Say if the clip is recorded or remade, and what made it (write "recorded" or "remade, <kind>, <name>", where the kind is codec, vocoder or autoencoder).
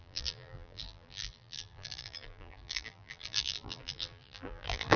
remade, vocoder, BigVGAN v2